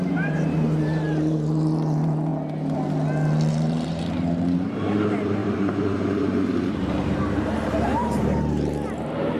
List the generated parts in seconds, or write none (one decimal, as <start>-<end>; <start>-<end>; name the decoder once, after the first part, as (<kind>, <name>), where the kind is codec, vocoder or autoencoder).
0.0-2.3 (vocoder, BigVGAN v2); 3.5-9.4